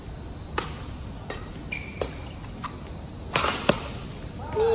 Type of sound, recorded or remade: recorded